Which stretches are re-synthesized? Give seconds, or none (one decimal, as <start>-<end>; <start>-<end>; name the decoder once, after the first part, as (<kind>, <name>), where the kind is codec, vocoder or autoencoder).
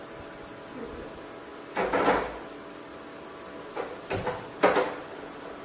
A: none